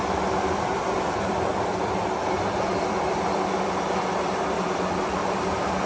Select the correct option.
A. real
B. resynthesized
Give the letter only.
A